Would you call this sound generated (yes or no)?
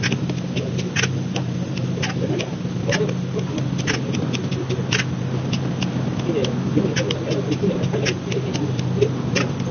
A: no